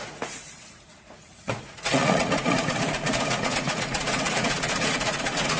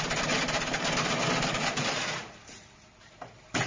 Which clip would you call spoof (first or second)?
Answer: first